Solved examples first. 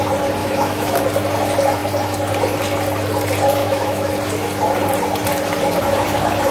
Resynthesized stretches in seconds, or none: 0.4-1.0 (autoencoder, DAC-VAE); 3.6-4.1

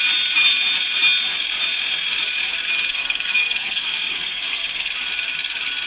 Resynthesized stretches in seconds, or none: 2.9-4.9 (codec, SNAC)

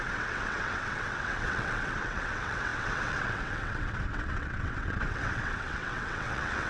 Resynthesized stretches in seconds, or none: 0.0-6.7 (vocoder, WaveNeXt)

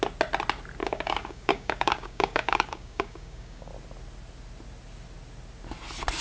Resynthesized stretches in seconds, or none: 0.8-3.7 (codec, DAC)

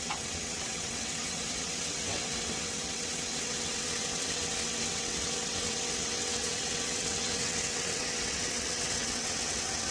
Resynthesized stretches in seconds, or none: 0.0-9.9 (vocoder, WaveNeXt)

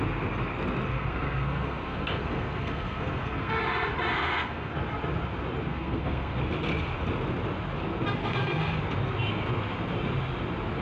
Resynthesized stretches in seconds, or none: 0.9-3.6 (codec, SNAC); 4.1-4.7; 5.7-6.4; 8.2-8.8

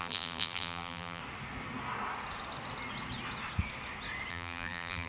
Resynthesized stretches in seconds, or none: 0.0-1.2 (vocoder, BigVGAN v2); 4.3-5.1

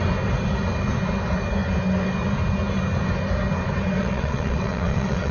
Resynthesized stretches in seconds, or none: 4.0-5.3 (vocoder, WaveNeXt)